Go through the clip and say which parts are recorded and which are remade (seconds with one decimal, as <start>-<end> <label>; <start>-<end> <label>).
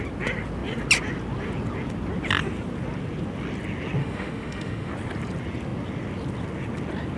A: 0.0-4.0 recorded; 4.0-4.9 remade; 4.9-7.2 recorded